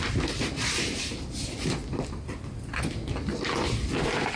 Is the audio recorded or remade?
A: recorded